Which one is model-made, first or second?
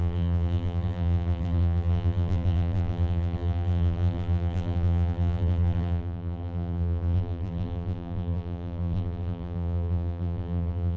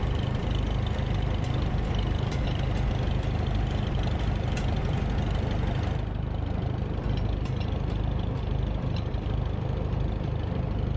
first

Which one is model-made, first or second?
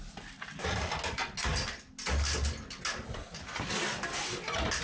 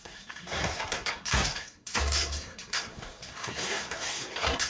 second